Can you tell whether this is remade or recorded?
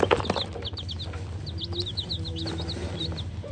recorded